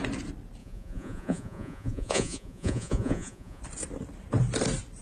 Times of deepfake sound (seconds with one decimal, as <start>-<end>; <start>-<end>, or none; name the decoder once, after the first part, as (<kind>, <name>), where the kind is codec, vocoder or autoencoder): 0.6-3.6 (vocoder, Vocos)